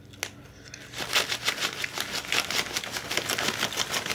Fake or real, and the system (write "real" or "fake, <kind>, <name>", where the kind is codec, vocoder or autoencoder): real